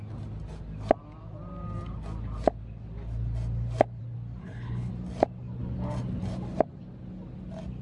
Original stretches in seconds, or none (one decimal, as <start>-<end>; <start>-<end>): 0.0-4.4; 4.9-7.8